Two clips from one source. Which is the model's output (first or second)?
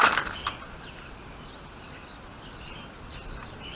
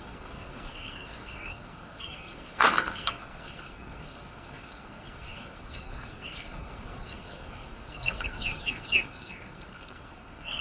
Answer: second